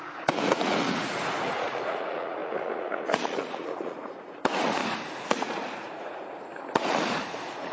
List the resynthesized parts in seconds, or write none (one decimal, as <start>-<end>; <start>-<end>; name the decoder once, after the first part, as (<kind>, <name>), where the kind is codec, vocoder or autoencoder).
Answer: 0.0-7.7 (vocoder, Vocos)

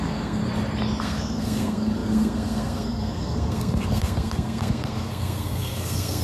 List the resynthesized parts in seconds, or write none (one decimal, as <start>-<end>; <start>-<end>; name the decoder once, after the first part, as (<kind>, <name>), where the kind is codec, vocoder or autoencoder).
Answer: 0.0-0.4 (codec, SNAC); 1.0-6.2